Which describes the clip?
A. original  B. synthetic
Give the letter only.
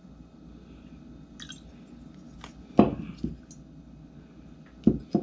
A